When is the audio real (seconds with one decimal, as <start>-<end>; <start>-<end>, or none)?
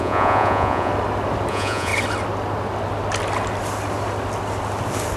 0.9-1.5; 1.9-5.2